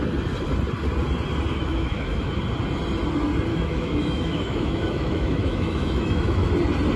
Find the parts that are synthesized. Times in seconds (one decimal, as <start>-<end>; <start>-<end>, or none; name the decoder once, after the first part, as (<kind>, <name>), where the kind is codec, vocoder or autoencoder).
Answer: 1.6-2.4 (autoencoder, DAC-VAE); 3.5-6.5